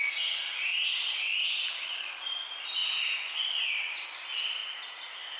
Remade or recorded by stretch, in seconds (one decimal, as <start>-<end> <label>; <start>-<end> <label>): 0.0-5.4 recorded